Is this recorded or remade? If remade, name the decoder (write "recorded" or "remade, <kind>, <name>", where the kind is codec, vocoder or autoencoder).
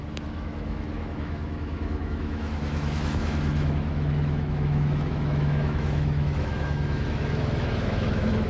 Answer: remade, autoencoder, DAC-VAE